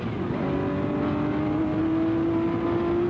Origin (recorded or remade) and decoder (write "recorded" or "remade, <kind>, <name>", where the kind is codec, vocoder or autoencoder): recorded